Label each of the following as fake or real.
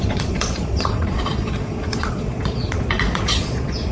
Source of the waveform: fake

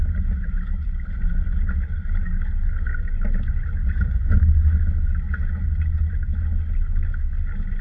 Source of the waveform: real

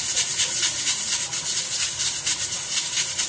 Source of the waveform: real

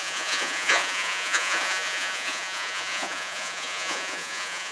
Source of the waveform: fake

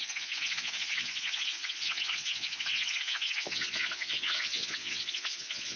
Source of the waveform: fake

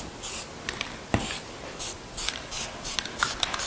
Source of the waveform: real